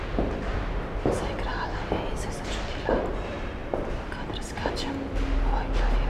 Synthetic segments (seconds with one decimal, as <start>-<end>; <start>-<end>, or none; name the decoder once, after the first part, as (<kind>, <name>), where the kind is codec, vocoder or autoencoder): none